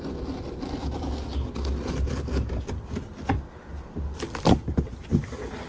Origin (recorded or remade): recorded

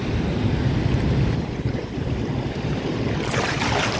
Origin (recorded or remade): remade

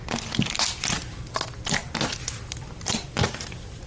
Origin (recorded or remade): recorded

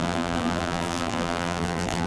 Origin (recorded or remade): remade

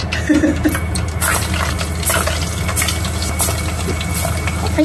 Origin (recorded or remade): recorded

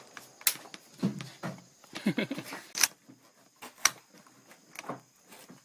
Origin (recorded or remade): recorded